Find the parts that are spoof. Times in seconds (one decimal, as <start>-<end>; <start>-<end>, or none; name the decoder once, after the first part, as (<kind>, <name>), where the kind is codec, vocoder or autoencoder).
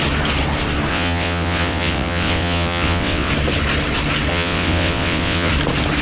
0.9-3.3 (vocoder, WaveNeXt); 4.3-5.5